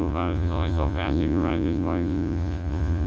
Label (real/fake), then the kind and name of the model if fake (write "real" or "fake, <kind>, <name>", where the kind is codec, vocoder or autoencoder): fake, vocoder, Vocos